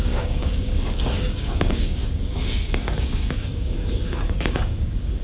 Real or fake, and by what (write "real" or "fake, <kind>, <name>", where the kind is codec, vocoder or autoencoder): fake, codec, DAC